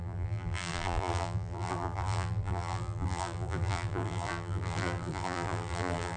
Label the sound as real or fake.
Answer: fake